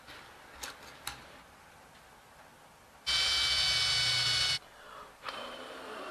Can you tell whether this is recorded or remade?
recorded